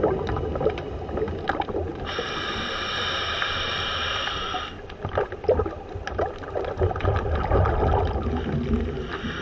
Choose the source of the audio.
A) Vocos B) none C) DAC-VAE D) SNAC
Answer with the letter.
B